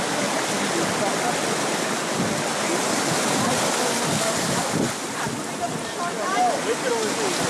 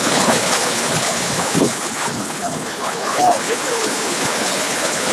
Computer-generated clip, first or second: second